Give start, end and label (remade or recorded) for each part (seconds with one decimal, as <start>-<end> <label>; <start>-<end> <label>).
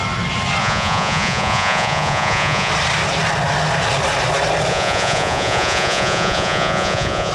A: 0.0-0.6 recorded; 0.6-2.7 remade; 2.7-4.7 recorded; 4.7-7.3 remade